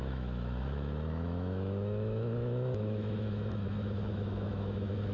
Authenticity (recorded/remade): remade